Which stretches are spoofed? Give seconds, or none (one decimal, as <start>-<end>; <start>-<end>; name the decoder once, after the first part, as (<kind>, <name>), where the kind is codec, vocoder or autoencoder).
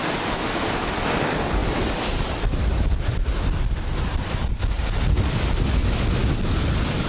none